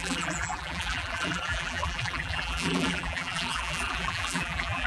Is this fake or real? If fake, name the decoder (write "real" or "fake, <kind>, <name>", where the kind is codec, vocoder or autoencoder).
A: fake, vocoder, BigVGAN v2